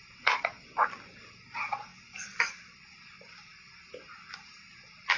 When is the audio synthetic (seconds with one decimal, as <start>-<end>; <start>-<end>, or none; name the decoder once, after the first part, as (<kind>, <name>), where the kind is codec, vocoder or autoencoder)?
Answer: none